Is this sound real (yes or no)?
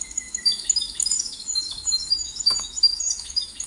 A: no